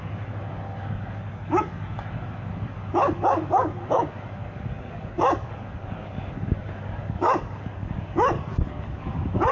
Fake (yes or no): yes